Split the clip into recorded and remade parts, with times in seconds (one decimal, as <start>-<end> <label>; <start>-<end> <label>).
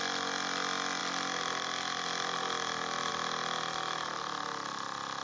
0.0-5.2 recorded